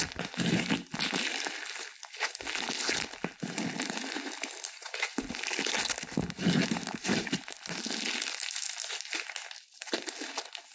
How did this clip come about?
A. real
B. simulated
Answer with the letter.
A